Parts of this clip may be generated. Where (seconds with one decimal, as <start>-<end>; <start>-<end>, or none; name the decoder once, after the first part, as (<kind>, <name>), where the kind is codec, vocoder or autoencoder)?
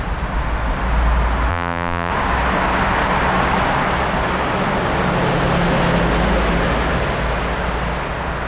1.5-2.1 (vocoder, BigVGAN v2)